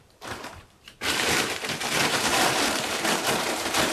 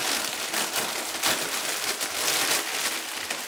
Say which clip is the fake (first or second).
first